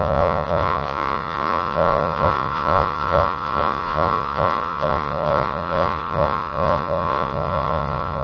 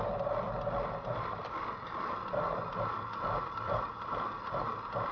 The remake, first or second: first